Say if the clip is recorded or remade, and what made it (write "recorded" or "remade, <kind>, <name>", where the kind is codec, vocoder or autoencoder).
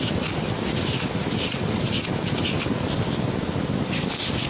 recorded